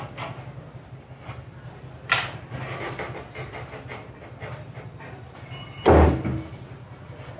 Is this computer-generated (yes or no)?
no